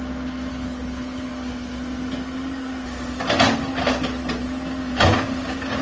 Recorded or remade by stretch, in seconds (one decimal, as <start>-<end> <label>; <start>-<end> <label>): 0.0-0.5 recorded; 0.5-1.3 remade; 1.3-5.8 recorded